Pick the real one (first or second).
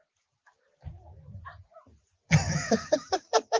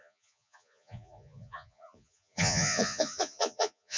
first